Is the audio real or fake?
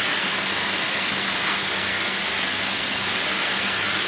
fake